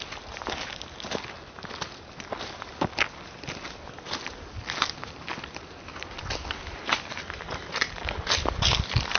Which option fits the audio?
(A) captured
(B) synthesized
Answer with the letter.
A